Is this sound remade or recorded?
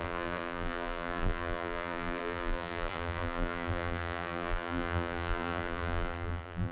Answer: remade